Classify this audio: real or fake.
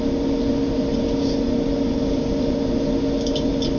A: real